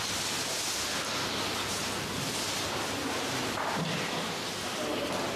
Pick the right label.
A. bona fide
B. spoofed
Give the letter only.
A